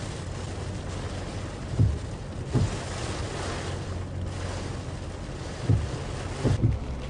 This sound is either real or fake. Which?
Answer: real